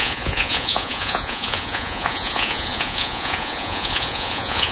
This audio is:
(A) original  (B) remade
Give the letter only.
B